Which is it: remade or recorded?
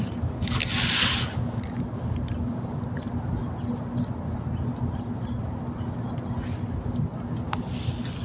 recorded